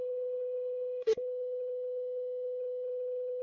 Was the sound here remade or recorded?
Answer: remade